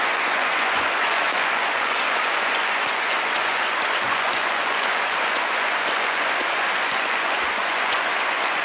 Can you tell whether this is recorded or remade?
remade